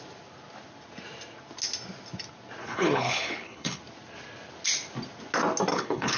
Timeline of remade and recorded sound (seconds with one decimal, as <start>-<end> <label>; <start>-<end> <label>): 0.0-2.6 recorded; 2.6-3.8 remade; 3.8-5.7 recorded; 5.7-6.2 remade

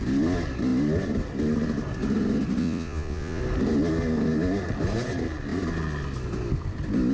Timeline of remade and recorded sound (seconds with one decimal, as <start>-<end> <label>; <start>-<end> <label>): 0.0-2.6 recorded; 2.6-3.4 remade; 3.4-7.1 recorded